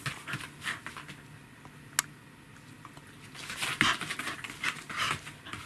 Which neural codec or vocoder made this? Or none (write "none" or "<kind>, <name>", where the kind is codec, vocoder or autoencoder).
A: none